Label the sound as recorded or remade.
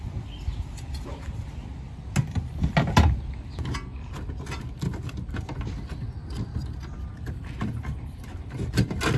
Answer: recorded